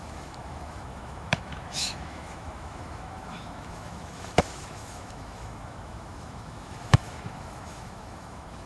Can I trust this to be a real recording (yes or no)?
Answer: no